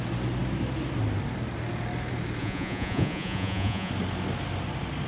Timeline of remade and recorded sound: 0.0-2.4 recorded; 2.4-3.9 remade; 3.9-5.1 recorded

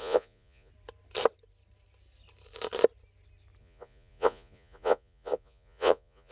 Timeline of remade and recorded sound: 0.0-0.7 remade; 0.7-3.6 recorded; 3.6-6.3 remade

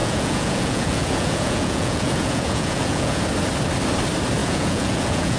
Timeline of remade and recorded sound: 0.0-3.2 remade; 3.2-4.4 recorded; 4.4-5.4 remade

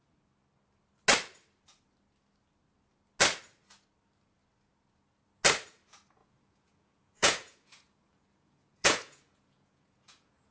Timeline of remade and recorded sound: 0.0-6.2 recorded; 6.2-10.5 remade

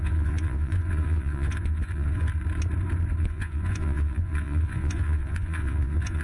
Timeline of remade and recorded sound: 0.0-2.3 remade; 2.3-3.2 recorded; 3.2-6.2 remade

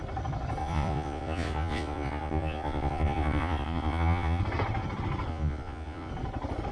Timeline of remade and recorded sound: 0.0-0.6 recorded; 0.6-4.4 remade; 4.4-5.3 recorded; 5.3-6.1 remade; 6.1-6.7 recorded

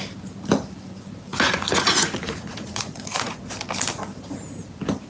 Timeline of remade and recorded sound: 0.0-1.3 recorded; 1.3-3.4 remade; 3.4-5.1 recorded